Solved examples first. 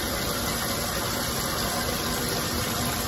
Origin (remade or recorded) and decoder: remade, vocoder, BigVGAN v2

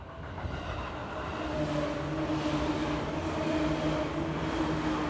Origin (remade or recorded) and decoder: recorded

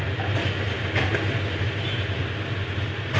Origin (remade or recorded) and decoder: recorded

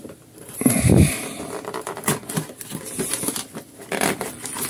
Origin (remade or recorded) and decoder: remade, vocoder, BigVGAN v2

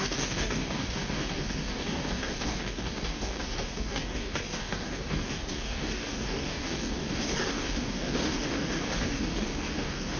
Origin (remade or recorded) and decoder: remade, codec, DAC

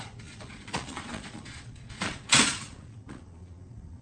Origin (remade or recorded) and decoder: remade, vocoder, Vocos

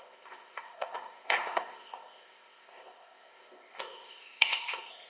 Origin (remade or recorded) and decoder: remade, codec, ZipCodec